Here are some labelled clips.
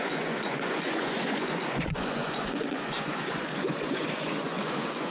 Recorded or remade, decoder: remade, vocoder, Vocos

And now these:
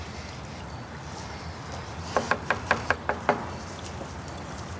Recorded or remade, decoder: recorded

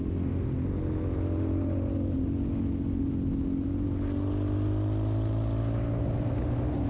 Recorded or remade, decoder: recorded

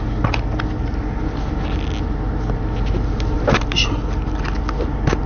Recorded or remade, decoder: recorded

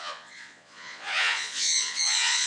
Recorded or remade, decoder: remade, vocoder, Vocos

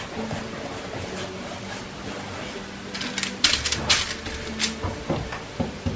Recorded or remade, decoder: recorded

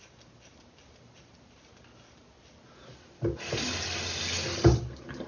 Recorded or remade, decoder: recorded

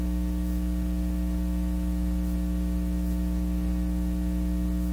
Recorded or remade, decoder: recorded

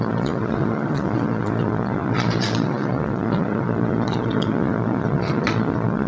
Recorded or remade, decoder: remade, vocoder, Vocos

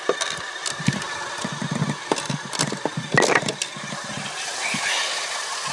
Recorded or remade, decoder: recorded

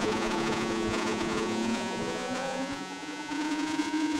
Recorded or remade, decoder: remade, vocoder, Vocos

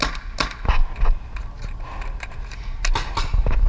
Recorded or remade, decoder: recorded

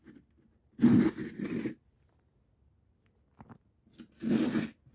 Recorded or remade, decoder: recorded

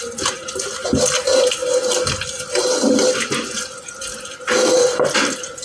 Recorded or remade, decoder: recorded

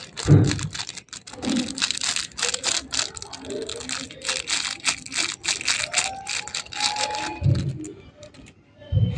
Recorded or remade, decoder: recorded